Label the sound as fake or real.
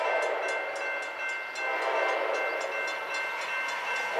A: real